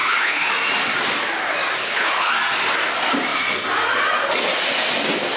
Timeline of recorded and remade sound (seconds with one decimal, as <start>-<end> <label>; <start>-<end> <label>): 0.0-0.5 remade; 0.5-1.8 recorded; 1.8-2.3 remade; 2.3-5.4 recorded